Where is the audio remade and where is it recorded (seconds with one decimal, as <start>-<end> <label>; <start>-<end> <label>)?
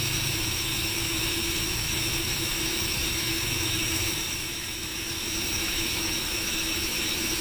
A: 0.0-7.4 remade